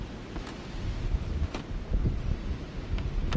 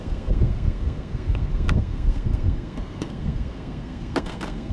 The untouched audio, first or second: first